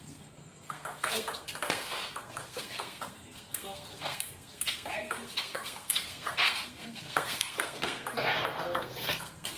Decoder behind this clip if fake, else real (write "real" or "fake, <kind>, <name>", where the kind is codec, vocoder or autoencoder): fake, codec, SNAC